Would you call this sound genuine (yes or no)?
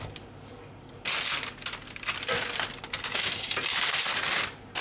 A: yes